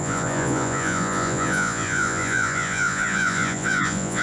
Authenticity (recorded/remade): remade